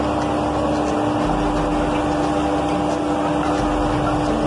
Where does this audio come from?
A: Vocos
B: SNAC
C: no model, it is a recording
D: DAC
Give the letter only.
C